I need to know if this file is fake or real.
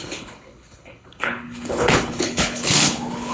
fake